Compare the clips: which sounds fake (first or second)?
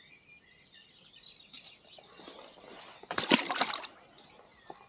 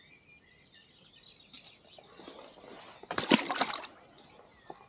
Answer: first